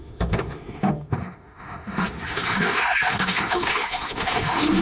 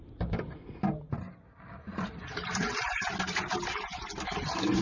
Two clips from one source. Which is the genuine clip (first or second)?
second